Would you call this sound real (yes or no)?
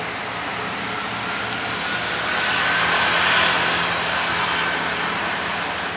yes